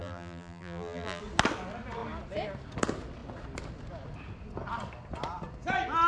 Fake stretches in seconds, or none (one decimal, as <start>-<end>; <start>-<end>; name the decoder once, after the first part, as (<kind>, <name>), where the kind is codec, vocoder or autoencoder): 0.0-1.2 (vocoder, BigVGAN v2)